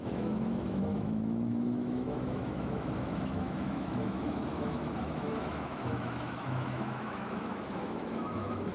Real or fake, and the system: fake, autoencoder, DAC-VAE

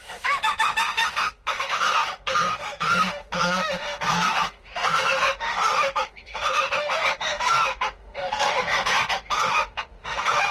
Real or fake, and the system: fake, autoencoder, DAC-VAE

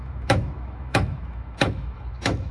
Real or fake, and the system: fake, autoencoder, DAC-VAE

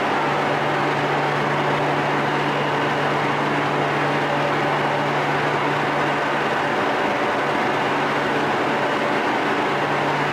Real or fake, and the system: real